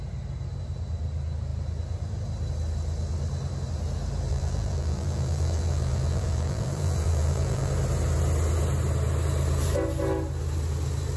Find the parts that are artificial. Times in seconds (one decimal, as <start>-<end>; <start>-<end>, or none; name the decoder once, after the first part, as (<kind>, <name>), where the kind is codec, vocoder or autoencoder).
4.3-7.7 (vocoder, BigVGAN v2)